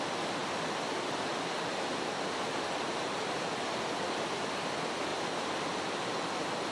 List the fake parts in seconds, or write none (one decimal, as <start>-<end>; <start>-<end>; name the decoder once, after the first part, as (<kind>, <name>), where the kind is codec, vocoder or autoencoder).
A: none